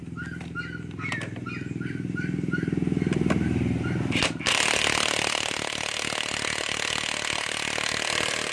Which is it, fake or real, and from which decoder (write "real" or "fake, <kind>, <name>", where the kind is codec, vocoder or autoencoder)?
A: real